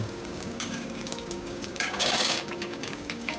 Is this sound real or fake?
fake